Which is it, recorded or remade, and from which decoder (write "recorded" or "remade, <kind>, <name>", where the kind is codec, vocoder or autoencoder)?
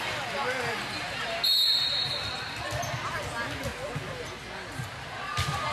recorded